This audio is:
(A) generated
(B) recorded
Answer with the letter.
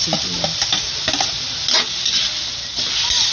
B